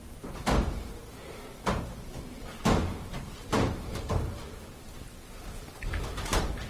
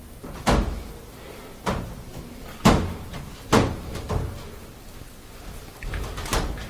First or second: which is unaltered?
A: second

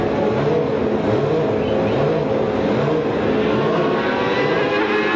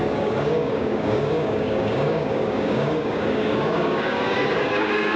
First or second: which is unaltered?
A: first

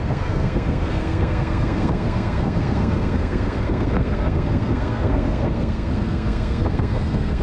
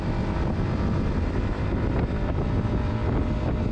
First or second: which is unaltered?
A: second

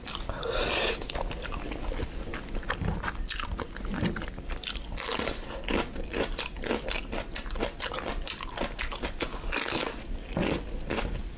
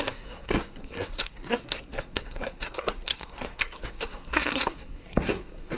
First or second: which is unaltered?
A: first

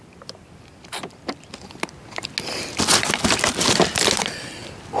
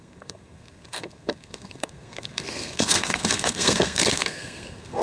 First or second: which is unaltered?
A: first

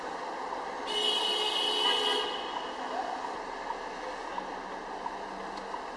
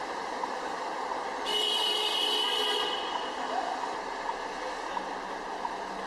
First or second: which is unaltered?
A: first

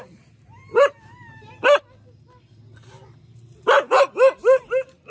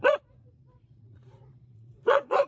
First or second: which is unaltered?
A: first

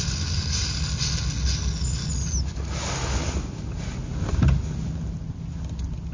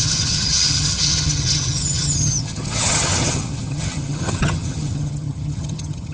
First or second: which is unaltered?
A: first